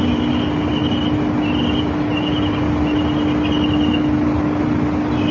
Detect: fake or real real